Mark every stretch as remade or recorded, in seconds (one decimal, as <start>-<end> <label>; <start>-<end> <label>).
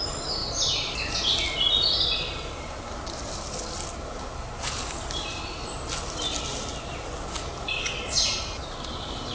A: 0.0-9.3 recorded